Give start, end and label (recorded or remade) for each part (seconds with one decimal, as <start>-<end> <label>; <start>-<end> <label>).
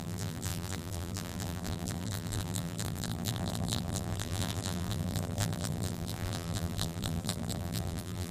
0.0-8.3 remade